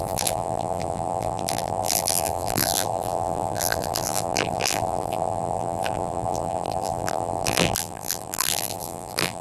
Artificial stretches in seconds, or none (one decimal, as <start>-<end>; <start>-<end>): 0.0-9.4